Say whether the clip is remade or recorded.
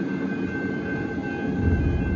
recorded